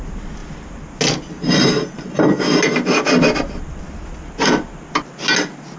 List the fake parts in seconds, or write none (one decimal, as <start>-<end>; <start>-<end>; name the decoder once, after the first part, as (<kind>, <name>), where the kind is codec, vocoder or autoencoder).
none